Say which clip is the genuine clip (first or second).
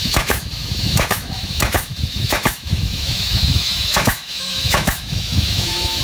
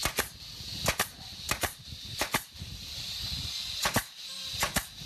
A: second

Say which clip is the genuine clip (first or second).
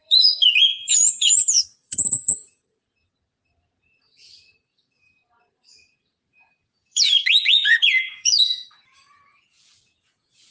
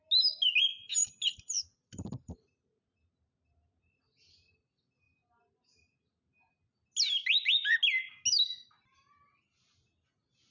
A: second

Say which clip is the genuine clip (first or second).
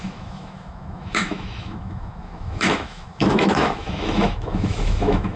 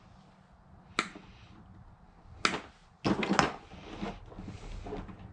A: second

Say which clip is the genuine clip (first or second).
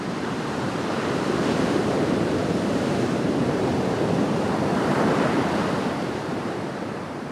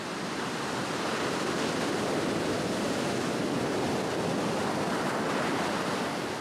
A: second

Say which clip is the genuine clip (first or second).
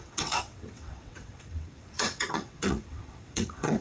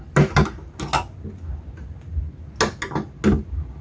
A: second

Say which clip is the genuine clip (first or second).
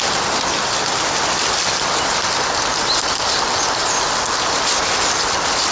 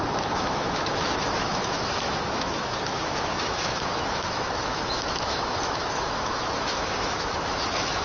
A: first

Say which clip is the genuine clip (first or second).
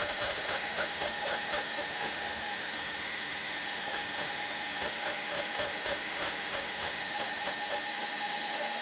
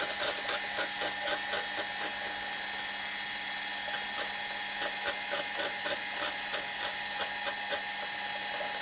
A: second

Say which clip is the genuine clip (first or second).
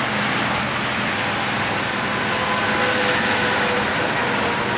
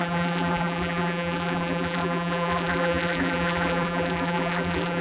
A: first